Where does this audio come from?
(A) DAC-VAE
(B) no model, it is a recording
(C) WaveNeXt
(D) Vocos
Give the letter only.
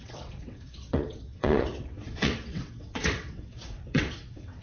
C